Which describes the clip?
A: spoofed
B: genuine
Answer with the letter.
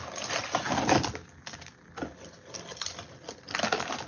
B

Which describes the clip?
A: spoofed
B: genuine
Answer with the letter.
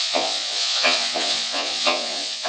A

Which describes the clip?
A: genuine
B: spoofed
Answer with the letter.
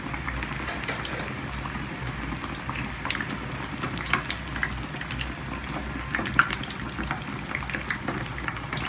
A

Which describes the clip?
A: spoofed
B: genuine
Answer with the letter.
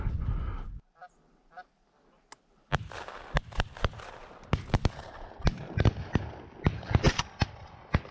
B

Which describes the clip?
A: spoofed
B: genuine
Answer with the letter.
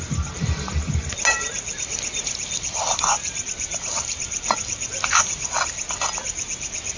B